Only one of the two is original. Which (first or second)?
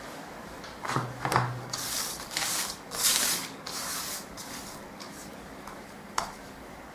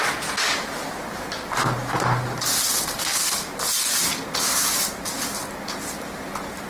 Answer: second